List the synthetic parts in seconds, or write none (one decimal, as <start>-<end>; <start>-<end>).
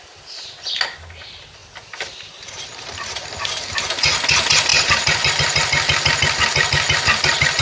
1.6-3.7; 4.7-5.3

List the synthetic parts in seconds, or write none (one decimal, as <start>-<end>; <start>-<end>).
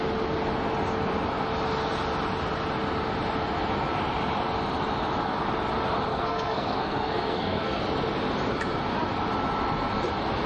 6.1-7.8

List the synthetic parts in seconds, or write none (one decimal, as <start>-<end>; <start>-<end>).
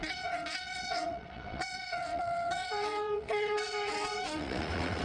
0.0-5.0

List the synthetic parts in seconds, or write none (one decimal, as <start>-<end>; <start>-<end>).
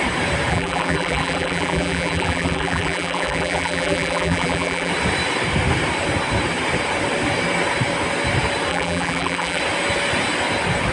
0.5-4.9; 8.7-9.6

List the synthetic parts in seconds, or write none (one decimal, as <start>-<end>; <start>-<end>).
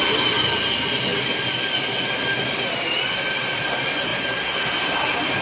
1.1-1.7